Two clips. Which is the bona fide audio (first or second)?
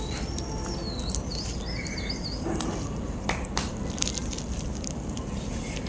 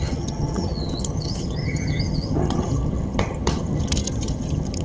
first